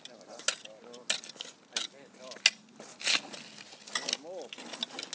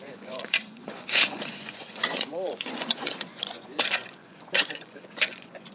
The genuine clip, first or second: first